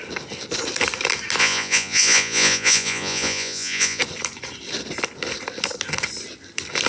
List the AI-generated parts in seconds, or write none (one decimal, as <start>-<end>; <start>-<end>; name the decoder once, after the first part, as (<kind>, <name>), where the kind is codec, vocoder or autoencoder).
1.4-4.0 (vocoder, Vocos)